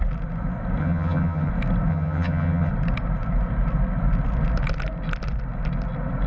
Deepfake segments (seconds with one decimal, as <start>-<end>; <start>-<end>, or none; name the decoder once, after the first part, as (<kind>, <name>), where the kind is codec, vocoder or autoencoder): 0.8-1.5 (vocoder, HiFi-GAN); 1.9-2.7